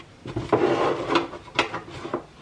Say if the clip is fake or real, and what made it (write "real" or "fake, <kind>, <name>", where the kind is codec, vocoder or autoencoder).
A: real